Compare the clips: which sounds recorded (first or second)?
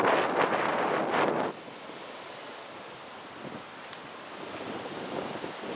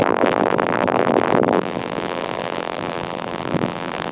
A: first